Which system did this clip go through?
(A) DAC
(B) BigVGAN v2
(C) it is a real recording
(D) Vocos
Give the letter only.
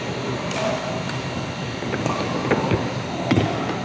C